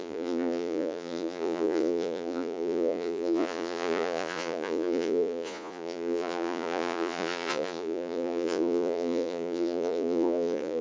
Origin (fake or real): fake